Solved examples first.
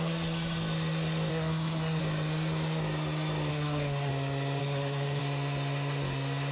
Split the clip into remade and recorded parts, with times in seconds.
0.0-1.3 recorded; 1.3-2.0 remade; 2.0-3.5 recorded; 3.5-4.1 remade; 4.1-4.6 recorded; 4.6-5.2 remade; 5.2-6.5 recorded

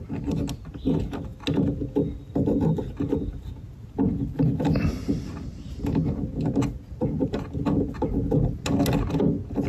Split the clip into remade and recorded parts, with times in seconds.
0.0-9.7 recorded

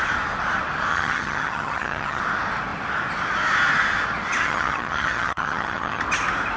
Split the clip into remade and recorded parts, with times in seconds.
0.0-0.9 recorded; 0.9-2.2 remade; 2.2-4.4 recorded; 4.4-6.0 remade; 6.0-6.6 recorded

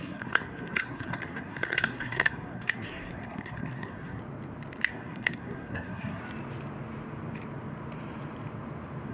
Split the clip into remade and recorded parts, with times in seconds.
0.0-4.2 remade; 4.2-4.9 recorded; 4.9-6.2 remade; 6.2-9.1 recorded

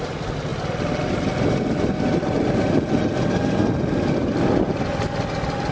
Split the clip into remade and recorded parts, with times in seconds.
0.0-5.7 recorded

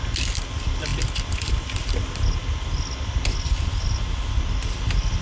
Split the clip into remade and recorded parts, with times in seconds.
0.0-5.2 recorded